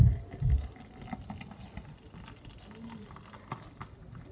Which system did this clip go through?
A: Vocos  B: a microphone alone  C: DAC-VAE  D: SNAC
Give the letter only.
B